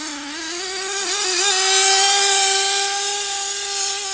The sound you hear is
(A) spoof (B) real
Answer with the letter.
B